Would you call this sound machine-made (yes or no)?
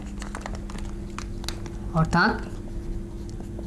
no